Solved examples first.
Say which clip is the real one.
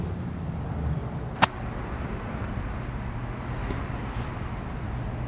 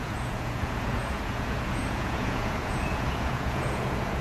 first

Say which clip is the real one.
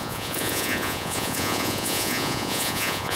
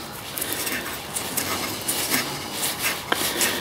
second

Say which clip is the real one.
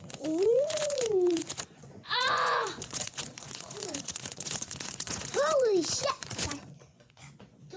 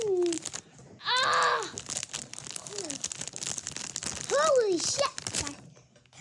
second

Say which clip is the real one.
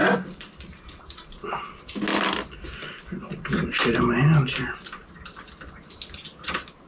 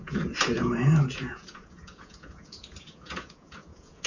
first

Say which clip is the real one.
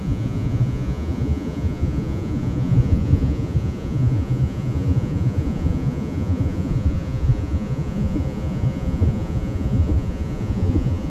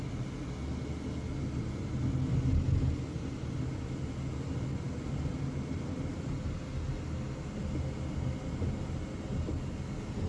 second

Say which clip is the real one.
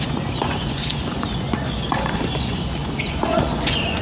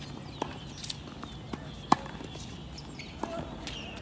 second